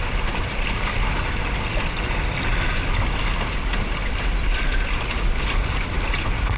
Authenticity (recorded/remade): recorded